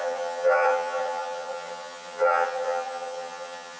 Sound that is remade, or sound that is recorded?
remade